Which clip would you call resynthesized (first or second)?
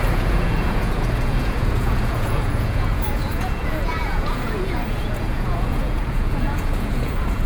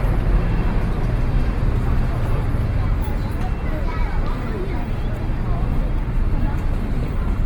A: first